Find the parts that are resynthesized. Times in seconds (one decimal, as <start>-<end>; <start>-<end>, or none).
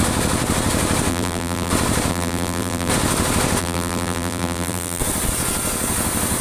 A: 1.1-1.7; 2.1-2.9; 3.6-5.0